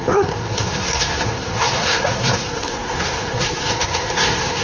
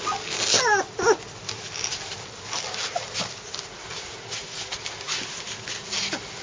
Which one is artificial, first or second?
first